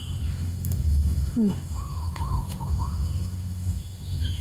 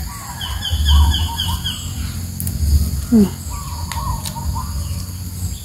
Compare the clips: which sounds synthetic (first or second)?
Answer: first